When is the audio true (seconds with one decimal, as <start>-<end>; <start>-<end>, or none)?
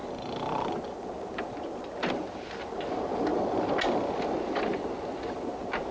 0.0-5.9